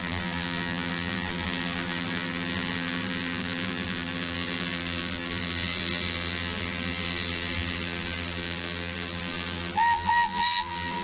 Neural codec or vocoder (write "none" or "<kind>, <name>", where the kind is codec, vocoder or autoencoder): vocoder, BigVGAN v2